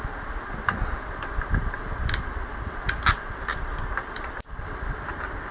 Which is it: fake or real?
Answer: real